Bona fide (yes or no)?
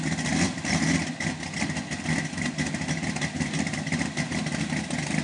yes